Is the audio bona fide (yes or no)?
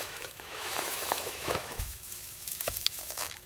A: no